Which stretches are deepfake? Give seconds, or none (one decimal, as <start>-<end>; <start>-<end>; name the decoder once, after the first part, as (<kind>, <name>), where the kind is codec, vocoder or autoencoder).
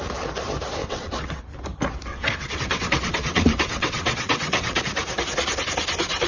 0.8-1.4 (vocoder, WaveNeXt); 2.1-4.8